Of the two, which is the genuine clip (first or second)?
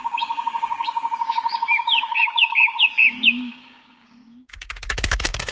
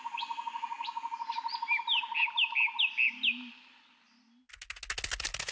second